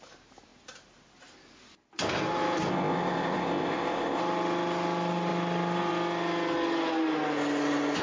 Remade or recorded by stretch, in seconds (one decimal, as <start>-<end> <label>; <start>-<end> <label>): 0.0-2.7 recorded; 2.7-4.2 remade; 4.2-8.0 recorded